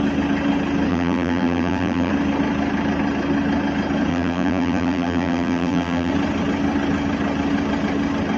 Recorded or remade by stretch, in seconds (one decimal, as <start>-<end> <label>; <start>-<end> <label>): 0.0-0.9 recorded; 0.9-2.1 remade; 2.1-4.1 recorded; 4.1-6.1 remade; 6.1-8.4 recorded